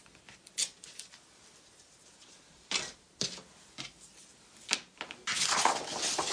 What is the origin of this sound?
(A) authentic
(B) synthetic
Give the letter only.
A